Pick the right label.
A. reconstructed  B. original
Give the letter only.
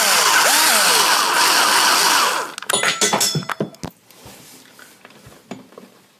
B